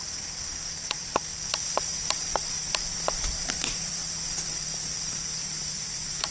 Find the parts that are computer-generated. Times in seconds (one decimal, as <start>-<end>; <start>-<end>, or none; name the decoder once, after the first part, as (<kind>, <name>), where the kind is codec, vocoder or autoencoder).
0.0-1.3 (vocoder, BigVGAN v2); 2.9-4.0; 5.4-6.3